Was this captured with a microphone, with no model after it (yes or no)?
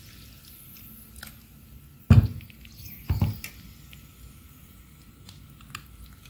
yes